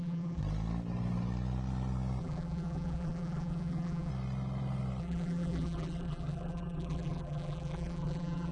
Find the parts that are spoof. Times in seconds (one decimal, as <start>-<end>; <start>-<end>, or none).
0.0-0.4; 2.2-4.1; 5.0-8.5